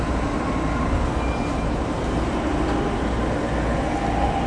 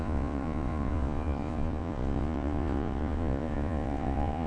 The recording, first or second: first